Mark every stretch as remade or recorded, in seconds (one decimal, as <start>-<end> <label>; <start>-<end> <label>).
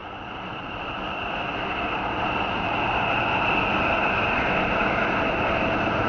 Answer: 0.0-3.7 remade; 3.7-6.1 recorded